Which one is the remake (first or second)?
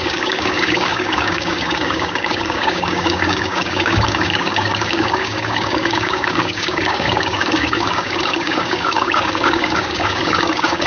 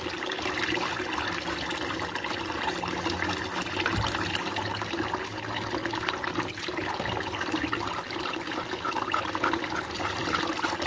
first